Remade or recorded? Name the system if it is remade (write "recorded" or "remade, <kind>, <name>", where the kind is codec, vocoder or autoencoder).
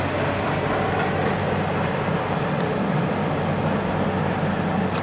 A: recorded